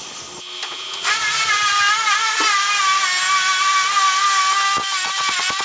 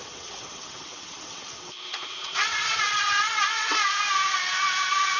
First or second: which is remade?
second